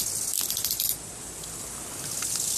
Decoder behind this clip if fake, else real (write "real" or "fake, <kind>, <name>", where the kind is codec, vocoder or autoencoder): real